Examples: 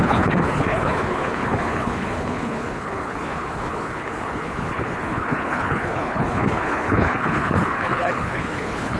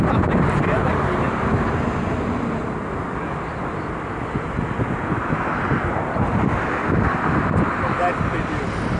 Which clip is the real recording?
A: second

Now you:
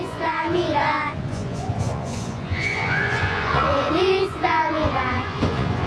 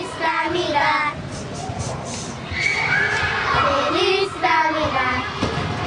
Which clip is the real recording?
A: second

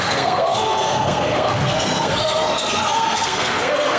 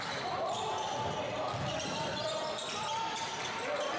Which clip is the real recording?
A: second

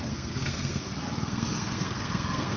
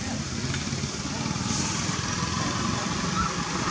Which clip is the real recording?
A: second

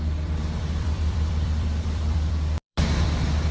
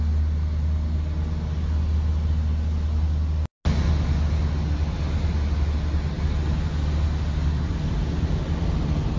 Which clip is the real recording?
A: second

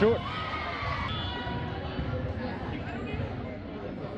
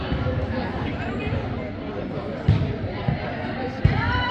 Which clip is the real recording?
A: first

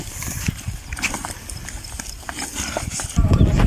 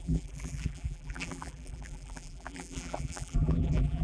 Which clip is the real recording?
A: first